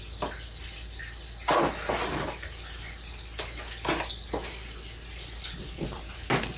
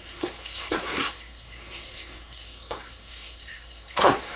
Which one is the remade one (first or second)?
second